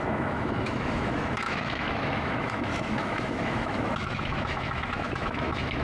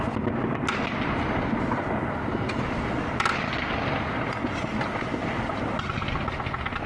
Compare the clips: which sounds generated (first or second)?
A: first